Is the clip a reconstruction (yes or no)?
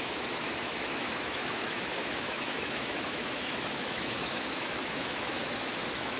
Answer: yes